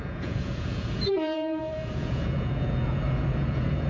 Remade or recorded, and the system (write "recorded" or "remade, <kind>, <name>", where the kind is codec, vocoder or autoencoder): remade, vocoder, Vocos